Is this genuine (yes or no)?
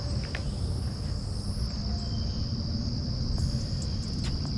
yes